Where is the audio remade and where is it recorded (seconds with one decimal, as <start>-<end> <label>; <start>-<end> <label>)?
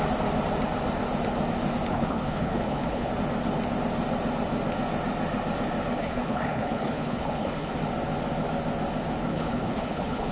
0.0-1.9 recorded; 1.9-3.1 remade; 3.1-6.0 recorded; 6.0-7.7 remade; 7.7-9.3 recorded; 9.3-10.3 remade